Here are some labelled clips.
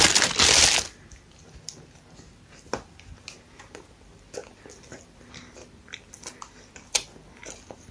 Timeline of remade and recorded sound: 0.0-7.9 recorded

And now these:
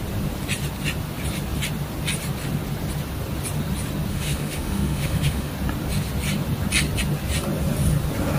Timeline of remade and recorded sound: 0.0-4.1 recorded; 4.1-5.5 remade; 5.5-8.4 recorded

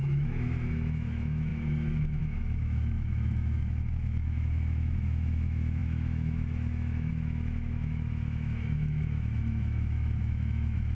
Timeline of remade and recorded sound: 0.0-10.9 remade

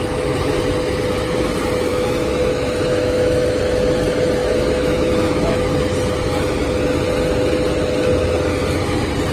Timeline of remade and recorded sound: 0.0-1.9 recorded; 1.9-3.6 remade; 3.6-4.4 recorded; 4.4-5.7 remade; 5.7-9.3 recorded

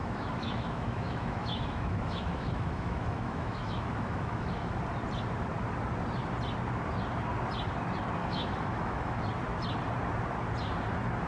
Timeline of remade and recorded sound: 0.0-4.8 remade; 4.8-8.2 recorded; 8.2-9.2 remade; 9.2-11.3 recorded